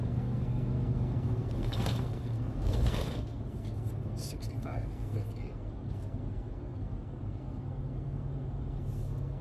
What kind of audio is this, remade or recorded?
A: remade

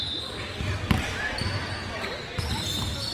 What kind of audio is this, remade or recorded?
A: recorded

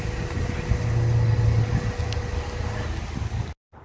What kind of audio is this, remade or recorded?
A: recorded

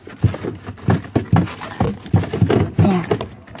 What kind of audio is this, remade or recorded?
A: recorded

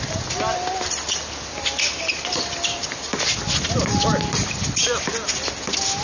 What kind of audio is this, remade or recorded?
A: recorded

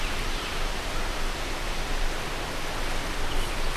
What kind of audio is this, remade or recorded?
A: recorded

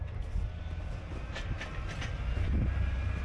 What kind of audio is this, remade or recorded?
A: recorded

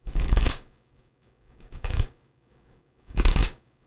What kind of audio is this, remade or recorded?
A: remade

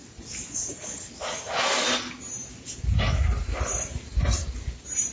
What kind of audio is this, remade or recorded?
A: recorded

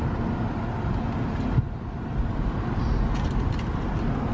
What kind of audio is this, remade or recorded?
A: recorded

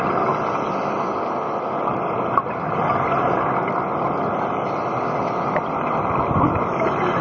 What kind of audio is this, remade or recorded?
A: recorded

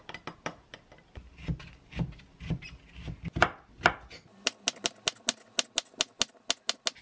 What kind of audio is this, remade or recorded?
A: recorded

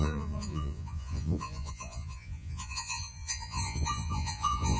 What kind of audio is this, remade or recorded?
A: remade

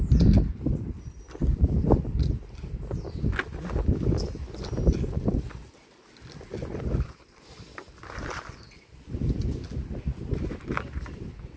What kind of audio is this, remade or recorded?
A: recorded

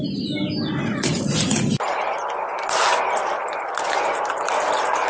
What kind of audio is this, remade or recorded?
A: recorded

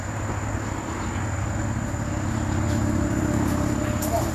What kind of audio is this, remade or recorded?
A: recorded